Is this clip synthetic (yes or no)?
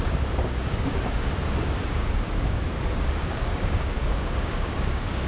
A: yes